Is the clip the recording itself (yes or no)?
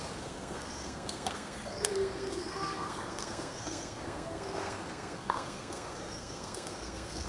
no